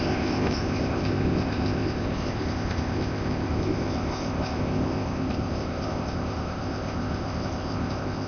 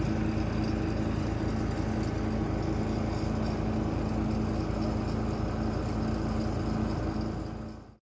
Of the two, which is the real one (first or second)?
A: second